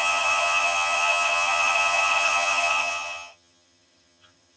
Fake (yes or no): yes